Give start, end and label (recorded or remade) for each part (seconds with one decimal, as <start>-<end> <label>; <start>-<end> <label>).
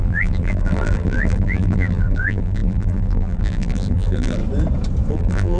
0.0-4.4 remade; 4.4-5.1 recorded; 5.1-5.6 remade